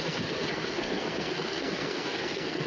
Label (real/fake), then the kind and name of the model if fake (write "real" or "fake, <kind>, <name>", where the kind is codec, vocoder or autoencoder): fake, codec, SNAC